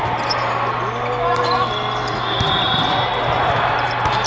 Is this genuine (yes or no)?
yes